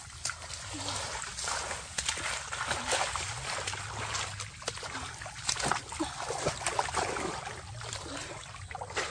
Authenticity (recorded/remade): recorded